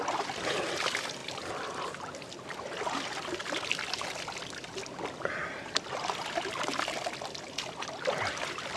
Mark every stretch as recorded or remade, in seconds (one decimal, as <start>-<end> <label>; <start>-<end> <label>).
0.0-8.8 recorded